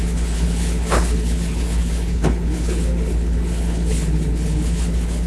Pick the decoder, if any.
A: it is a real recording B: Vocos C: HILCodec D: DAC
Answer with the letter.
C